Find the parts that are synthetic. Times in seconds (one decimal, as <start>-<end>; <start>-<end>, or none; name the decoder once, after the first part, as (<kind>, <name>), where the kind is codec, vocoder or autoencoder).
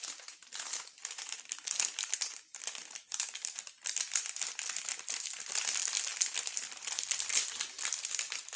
none